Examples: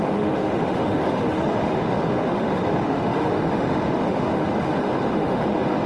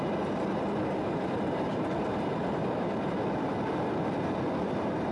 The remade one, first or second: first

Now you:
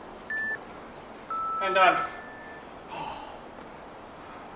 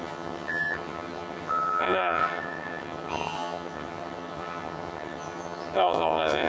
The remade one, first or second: second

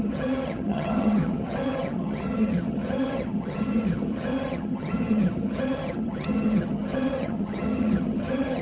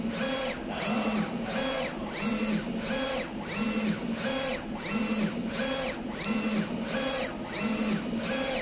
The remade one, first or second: first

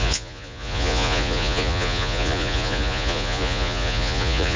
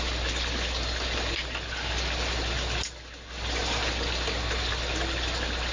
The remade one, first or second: first